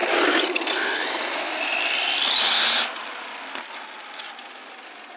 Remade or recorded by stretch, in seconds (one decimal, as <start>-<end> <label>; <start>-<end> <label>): 0.0-5.2 recorded